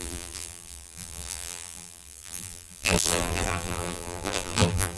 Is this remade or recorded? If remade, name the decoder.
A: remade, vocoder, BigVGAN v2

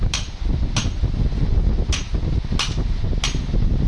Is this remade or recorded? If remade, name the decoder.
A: recorded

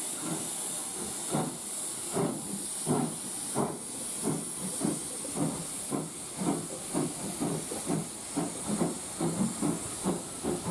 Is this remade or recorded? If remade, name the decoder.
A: recorded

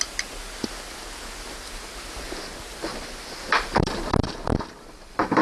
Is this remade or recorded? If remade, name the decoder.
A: recorded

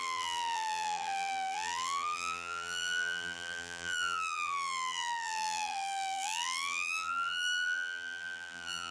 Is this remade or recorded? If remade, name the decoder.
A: remade, vocoder, BigVGAN v2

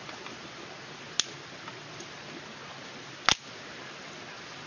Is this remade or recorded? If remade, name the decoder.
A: recorded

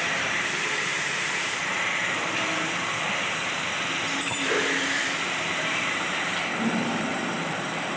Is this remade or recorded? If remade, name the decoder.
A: remade, vocoder, BigVGAN v2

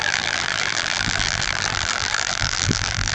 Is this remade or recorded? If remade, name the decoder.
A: remade, vocoder, BigVGAN v2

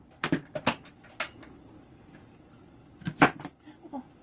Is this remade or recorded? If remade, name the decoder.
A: recorded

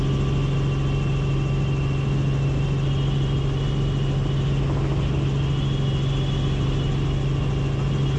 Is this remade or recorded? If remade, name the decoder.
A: recorded